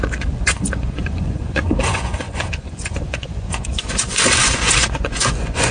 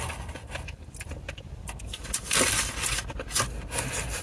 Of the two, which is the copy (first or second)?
first